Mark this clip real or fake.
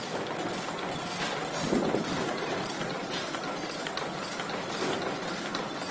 real